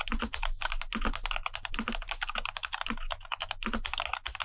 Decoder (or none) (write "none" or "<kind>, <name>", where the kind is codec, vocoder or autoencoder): none